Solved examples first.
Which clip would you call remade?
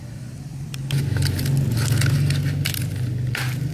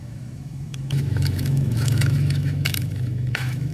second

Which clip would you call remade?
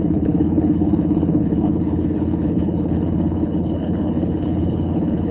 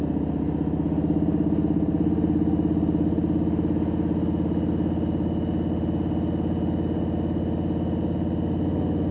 first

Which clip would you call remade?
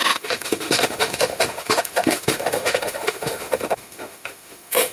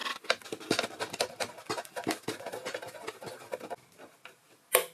first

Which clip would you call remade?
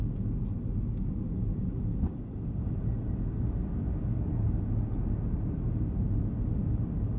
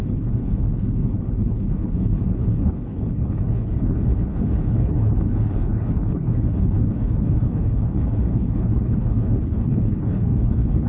second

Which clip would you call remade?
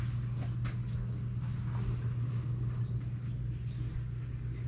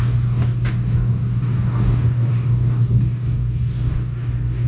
second